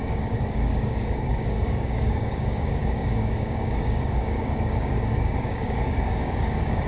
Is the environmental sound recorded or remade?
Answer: remade